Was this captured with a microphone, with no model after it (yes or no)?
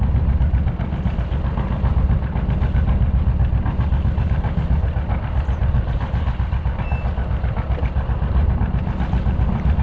yes